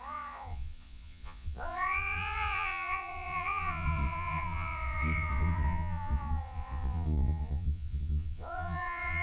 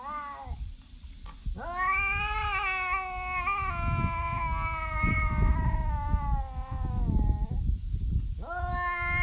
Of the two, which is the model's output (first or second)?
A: first